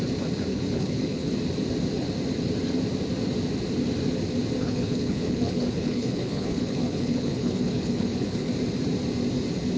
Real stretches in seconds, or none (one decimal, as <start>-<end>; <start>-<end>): 0.0-0.5; 1.3-4.6; 8.5-9.8